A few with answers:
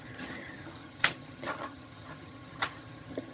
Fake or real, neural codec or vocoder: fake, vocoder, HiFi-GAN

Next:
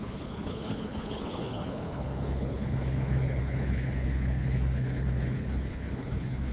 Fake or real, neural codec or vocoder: fake, codec, HILCodec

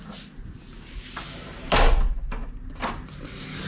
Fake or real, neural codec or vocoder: real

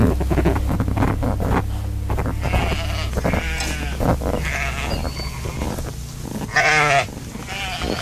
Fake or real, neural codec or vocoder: real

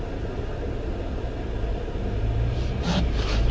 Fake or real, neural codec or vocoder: real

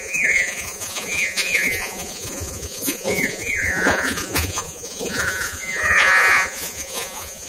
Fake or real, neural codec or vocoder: fake, vocoder, Vocos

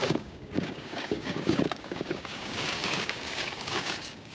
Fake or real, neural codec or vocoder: fake, codec, DAC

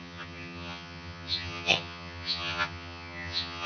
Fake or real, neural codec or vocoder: fake, vocoder, HiFi-GAN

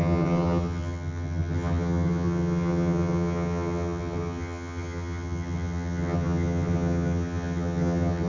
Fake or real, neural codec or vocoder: fake, vocoder, HiFi-GAN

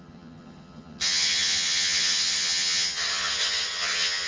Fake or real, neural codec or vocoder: fake, vocoder, HiFi-GAN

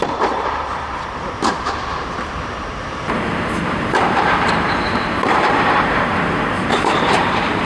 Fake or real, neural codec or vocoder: fake, vocoder, BigVGAN v2